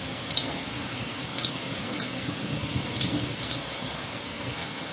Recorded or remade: remade